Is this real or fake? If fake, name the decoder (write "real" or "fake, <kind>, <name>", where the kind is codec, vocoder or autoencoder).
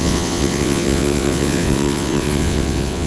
fake, vocoder, WaveNeXt